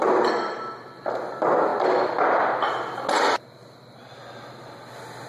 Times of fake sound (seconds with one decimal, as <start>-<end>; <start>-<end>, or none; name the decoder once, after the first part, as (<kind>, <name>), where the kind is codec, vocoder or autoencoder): none